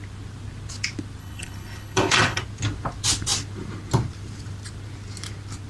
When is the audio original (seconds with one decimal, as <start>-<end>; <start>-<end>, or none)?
0.0-1.2; 2.4-5.7